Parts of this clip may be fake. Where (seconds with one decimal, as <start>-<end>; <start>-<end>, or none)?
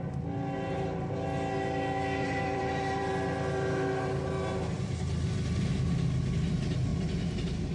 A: 2.2-3.1